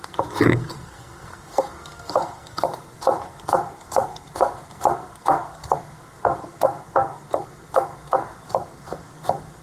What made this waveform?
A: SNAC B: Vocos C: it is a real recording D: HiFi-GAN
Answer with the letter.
A